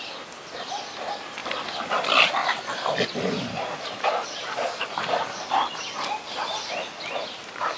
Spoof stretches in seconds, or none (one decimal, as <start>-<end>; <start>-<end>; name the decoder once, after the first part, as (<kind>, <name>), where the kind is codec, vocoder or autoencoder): 1.4-2.0 (vocoder, BigVGAN v2); 2.4-5.5